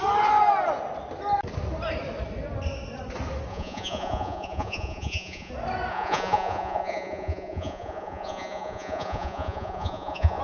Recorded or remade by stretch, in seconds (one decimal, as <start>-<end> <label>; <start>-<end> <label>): 0.0-3.5 recorded; 3.5-5.5 remade; 5.5-5.9 recorded; 5.9-10.4 remade